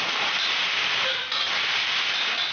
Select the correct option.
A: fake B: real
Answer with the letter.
B